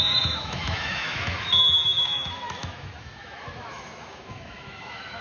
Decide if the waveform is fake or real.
fake